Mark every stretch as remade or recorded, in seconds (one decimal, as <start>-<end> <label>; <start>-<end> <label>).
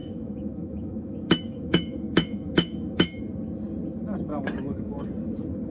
0.0-3.2 remade; 3.2-4.3 recorded; 4.3-5.1 remade; 5.1-5.7 recorded